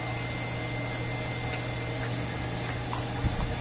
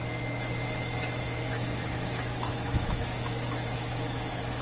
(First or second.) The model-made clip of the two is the second